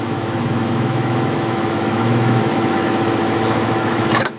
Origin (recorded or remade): remade